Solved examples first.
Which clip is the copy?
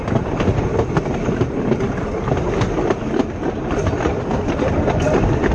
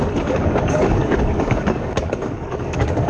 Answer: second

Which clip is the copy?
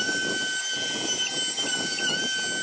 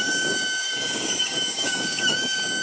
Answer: second